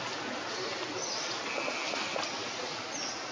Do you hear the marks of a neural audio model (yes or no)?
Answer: no